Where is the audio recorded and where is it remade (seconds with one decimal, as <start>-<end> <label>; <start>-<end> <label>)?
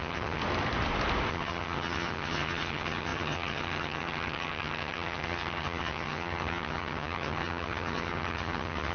0.0-0.4 remade; 0.4-1.3 recorded; 1.3-8.9 remade